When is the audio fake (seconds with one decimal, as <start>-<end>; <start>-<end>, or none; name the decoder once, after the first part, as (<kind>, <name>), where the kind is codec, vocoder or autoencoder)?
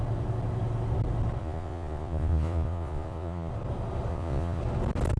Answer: 1.4-3.5 (vocoder, Vocos); 4.1-4.6